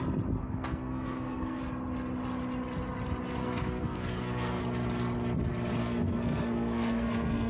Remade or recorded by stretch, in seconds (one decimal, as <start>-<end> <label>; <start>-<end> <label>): 0.0-0.4 recorded; 0.4-1.6 remade; 1.6-3.4 recorded; 3.4-4.6 remade; 4.6-5.8 recorded; 5.8-7.5 remade